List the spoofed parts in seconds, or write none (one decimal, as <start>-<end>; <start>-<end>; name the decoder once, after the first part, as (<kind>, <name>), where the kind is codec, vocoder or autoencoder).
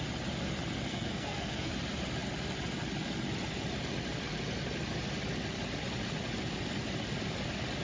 0.9-1.7 (codec, SNAC)